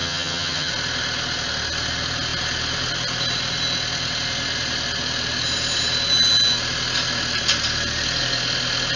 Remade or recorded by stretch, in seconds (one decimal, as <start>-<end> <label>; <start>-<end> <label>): 0.0-0.7 remade; 0.7-9.0 recorded